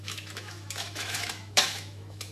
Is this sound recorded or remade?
remade